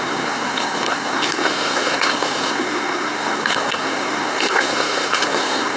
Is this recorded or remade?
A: remade